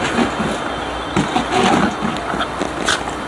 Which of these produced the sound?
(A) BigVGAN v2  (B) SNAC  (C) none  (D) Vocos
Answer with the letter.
C